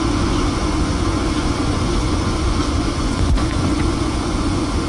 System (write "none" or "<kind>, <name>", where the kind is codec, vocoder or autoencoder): vocoder, Vocos